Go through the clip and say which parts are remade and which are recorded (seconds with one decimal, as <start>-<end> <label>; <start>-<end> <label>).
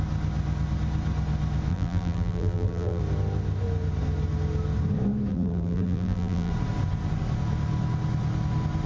0.0-1.7 recorded; 1.7-3.0 remade; 3.0-5.3 recorded; 5.3-6.5 remade; 6.5-8.9 recorded